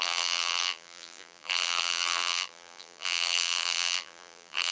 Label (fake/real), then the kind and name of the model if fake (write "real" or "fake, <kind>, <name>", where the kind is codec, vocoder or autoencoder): fake, vocoder, BigVGAN v2